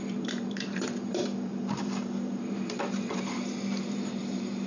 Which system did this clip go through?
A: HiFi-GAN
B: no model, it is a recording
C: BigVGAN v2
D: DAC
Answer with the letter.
C